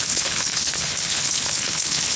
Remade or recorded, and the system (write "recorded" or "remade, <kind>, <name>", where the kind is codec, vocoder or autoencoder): remade, codec, HILCodec